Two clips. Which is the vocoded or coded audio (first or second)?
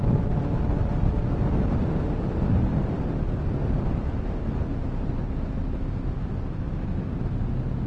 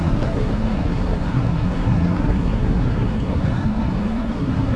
second